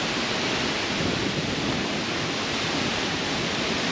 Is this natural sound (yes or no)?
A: no